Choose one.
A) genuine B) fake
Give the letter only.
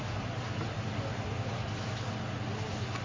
A